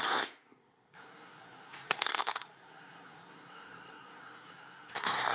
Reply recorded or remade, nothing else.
remade